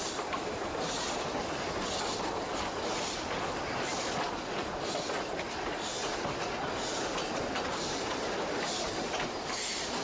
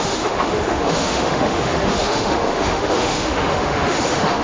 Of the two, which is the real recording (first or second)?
first